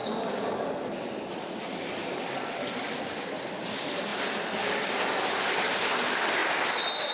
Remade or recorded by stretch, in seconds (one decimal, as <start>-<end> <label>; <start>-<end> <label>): 0.0-7.1 recorded